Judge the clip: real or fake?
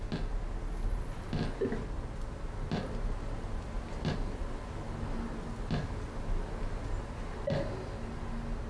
real